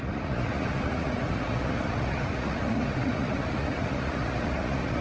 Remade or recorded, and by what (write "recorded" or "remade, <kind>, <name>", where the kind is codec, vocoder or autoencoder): remade, vocoder, Vocos